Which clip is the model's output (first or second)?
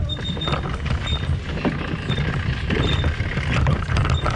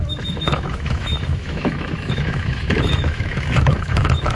second